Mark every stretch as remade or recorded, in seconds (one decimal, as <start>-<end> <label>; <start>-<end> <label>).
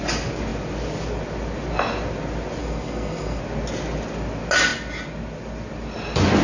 0.0-2.6 recorded; 2.6-3.4 remade; 3.4-6.4 recorded